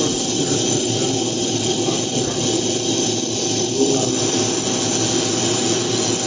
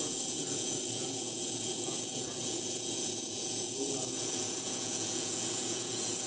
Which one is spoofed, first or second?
second